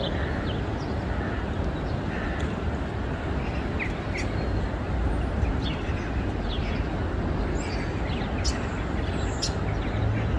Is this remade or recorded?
recorded